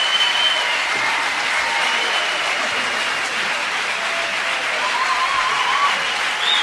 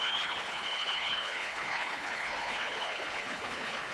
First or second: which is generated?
second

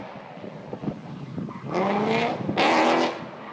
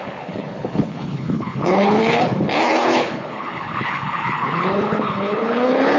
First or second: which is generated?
second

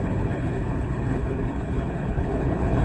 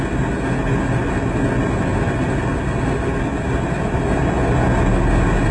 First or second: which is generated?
first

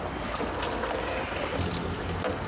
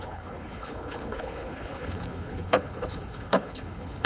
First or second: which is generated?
second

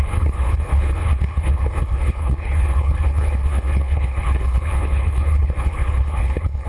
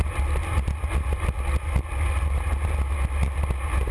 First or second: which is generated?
first